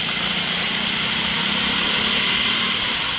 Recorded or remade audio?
recorded